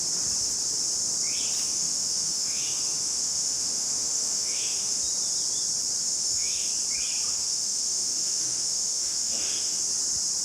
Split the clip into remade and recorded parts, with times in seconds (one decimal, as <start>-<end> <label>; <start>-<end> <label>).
0.0-1.6 recorded; 1.6-5.0 remade; 5.0-6.0 recorded; 6.0-6.7 remade; 6.7-7.3 recorded; 7.3-9.8 remade; 9.8-10.4 recorded